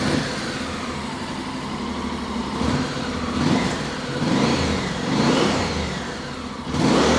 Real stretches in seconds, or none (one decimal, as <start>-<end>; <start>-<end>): 0.0-2.4; 5.6-7.2